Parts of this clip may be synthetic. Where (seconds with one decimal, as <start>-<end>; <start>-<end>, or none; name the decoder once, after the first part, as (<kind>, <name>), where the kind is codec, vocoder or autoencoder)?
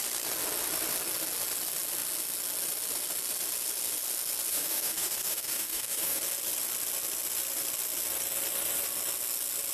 4.5-6.2 (codec, DAC)